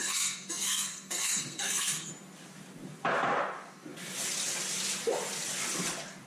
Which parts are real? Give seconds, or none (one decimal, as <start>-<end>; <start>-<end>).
2.1-6.3